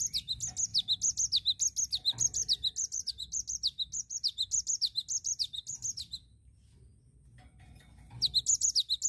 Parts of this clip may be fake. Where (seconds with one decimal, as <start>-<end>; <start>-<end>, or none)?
none